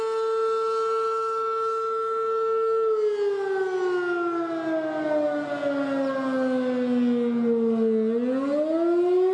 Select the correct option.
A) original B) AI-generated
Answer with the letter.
A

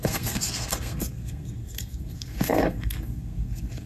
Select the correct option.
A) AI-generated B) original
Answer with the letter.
A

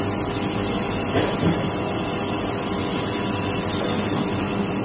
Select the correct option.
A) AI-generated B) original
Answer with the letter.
B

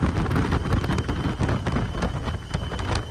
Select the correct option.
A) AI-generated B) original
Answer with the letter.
B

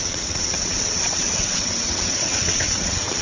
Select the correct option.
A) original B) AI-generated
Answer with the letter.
B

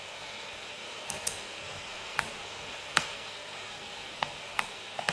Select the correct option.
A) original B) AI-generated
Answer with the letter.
B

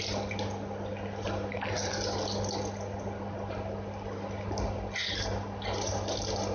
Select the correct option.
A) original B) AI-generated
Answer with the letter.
A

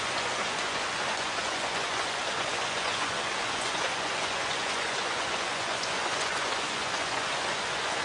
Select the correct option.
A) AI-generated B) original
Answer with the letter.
A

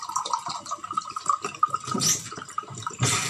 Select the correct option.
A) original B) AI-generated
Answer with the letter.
B